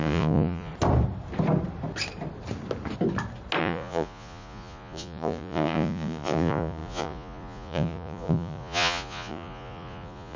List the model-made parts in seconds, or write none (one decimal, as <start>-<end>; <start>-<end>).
0.0-0.7; 3.6-10.4